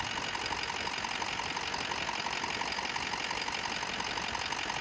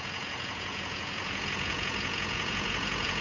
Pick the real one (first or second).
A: first